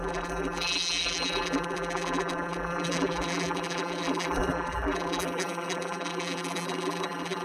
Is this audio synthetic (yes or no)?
yes